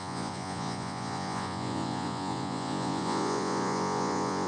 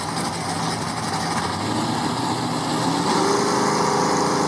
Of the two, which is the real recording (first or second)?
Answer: second